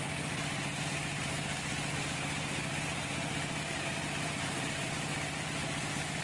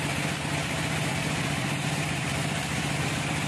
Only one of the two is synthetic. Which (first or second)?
second